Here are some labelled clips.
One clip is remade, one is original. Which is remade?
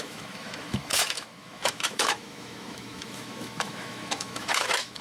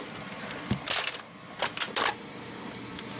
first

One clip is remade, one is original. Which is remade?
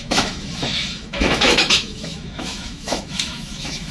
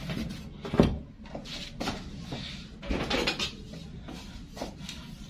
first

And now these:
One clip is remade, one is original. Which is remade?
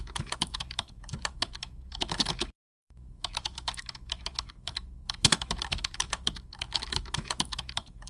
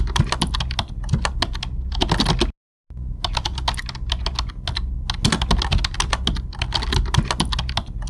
first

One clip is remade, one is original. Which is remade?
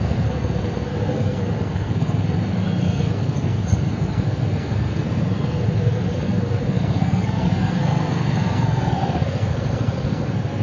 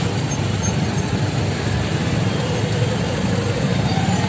first